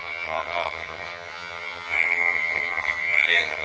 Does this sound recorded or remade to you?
remade